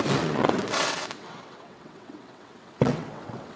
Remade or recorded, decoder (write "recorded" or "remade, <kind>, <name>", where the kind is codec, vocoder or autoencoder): remade, vocoder, WaveNeXt